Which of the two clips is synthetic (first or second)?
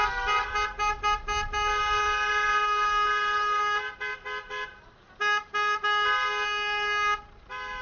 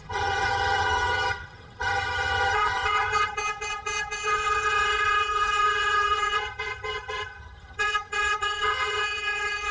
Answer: second